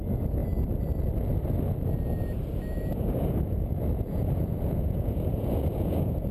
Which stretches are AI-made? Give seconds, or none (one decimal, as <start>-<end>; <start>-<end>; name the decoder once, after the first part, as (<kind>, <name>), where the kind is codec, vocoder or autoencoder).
0.0-0.4 (vocoder, Vocos); 2.9-6.3